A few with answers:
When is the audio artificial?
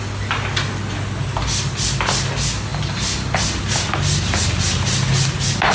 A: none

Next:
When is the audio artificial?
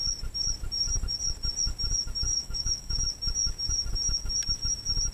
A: 2.3-3.0 (autoencoder, DAC-VAE)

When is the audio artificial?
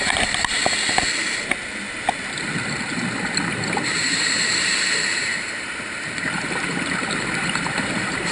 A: 0.0-0.6 (vocoder, BigVGAN v2); 3.7-8.3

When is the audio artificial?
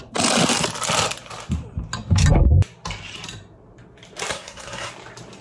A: 4.3-4.9 (codec, SNAC)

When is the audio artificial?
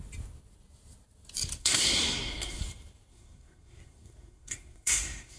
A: 1.6-2.6 (codec, SNAC); 3.1-5.4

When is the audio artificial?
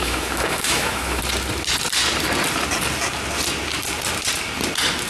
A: 0.0-1.2 (autoencoder, DAC-VAE)